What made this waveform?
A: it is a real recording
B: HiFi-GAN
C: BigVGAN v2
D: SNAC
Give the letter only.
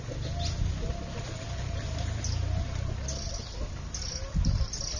A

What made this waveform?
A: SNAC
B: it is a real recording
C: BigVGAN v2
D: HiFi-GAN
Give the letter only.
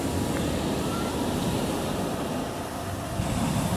B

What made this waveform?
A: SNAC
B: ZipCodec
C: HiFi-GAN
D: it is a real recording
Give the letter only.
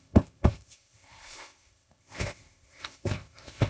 B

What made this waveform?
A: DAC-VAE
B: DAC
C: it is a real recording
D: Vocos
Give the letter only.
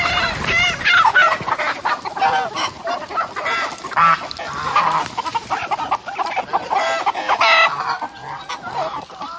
C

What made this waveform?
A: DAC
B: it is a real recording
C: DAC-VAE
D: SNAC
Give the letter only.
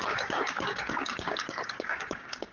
A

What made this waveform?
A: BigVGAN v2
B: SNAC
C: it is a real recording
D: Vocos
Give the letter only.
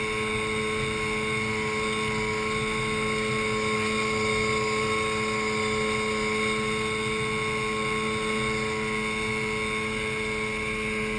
C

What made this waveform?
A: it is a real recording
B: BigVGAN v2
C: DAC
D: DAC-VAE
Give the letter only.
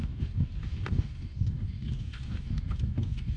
C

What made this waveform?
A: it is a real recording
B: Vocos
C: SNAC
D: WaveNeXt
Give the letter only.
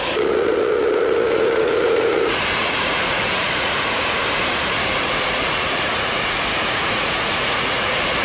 B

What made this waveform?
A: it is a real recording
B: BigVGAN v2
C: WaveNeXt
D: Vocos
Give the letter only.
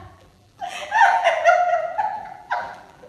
B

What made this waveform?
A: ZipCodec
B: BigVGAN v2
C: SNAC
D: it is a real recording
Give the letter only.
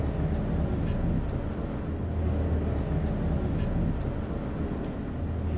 D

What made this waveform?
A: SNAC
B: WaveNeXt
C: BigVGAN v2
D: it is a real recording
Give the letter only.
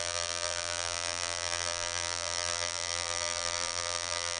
C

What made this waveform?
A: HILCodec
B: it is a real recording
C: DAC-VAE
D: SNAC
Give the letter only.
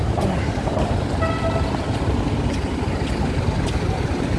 B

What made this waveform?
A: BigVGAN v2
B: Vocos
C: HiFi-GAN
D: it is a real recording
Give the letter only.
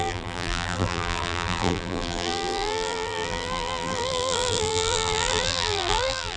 A